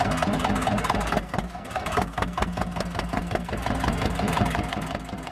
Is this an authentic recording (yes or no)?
no